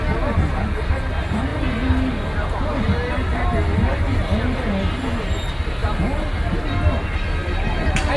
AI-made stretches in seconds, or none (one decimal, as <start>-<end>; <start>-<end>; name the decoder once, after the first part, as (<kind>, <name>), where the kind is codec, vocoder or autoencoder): none